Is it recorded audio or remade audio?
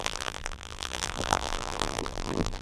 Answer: remade